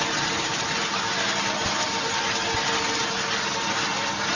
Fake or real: real